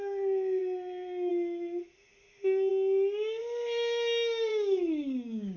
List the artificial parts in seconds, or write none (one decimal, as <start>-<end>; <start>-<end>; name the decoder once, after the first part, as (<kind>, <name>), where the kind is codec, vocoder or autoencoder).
4.5-5.6 (codec, DAC)